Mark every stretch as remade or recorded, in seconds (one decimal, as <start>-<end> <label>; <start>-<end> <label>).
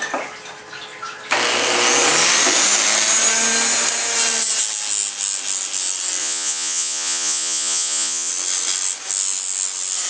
0.0-6.2 recorded; 6.2-8.3 remade; 8.3-10.1 recorded